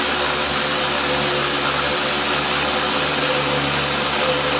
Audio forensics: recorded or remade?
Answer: recorded